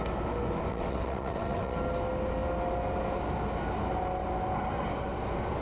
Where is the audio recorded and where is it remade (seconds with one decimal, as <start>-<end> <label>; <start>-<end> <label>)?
0.0-0.7 recorded; 0.7-1.8 remade; 1.8-5.6 recorded